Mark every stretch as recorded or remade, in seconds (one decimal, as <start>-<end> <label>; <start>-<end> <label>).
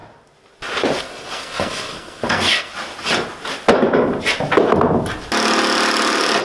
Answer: 0.0-1.0 recorded; 1.0-2.7 remade; 2.7-6.4 recorded